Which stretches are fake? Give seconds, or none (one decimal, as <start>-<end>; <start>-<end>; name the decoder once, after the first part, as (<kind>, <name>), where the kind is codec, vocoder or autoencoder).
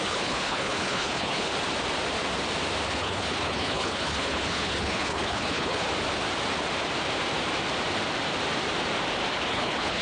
0.0-1.5 (codec, HILCodec); 2.9-5.9; 9.5-10.0